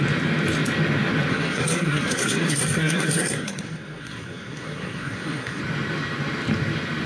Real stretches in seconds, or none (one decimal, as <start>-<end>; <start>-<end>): 0.0-1.3; 5.6-7.1